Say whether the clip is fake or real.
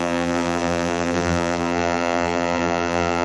fake